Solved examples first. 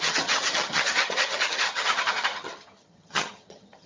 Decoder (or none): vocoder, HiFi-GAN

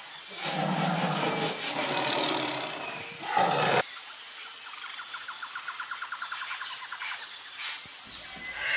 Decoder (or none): none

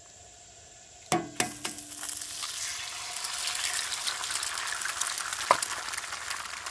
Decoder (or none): none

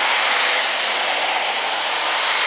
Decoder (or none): none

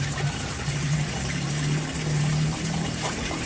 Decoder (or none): vocoder, BigVGAN v2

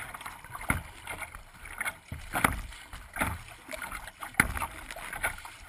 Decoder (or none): none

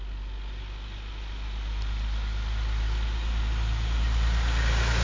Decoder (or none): none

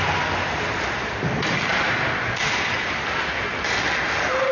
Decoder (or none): none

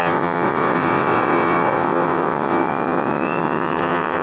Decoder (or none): vocoder, WaveNeXt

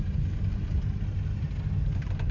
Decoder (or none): none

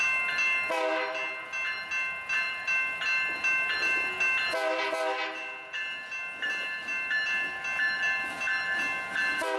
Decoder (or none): none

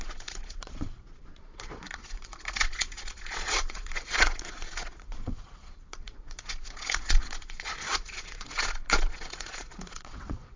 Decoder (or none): vocoder, Vocos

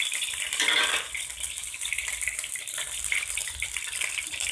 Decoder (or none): vocoder, BigVGAN v2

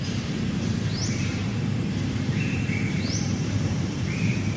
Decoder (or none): vocoder, BigVGAN v2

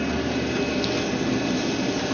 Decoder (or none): none